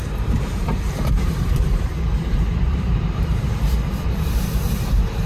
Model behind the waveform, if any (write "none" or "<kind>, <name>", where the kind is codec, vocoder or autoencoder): vocoder, BigVGAN v2